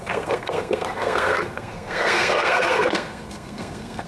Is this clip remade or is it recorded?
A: remade